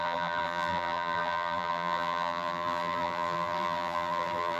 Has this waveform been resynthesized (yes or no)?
yes